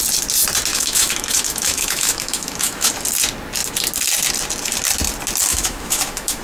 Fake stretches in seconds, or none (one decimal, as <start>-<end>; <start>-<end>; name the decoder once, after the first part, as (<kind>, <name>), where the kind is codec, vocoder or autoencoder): 0.7-2.9 (autoencoder, DAC-VAE); 5.5-6.4